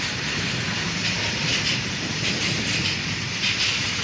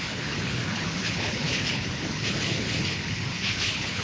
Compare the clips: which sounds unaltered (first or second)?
first